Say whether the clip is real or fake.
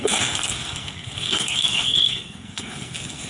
fake